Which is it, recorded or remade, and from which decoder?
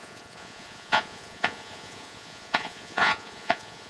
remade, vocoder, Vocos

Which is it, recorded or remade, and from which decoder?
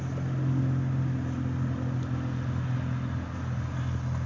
recorded